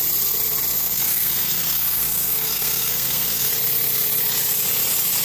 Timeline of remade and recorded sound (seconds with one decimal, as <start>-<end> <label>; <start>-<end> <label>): 0.0-0.7 recorded; 0.7-3.5 remade; 3.5-5.2 recorded